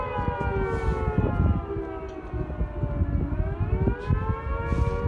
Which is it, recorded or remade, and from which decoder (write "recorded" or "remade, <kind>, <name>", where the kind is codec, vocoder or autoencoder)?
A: recorded